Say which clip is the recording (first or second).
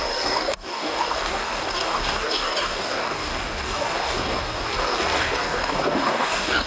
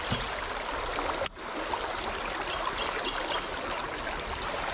second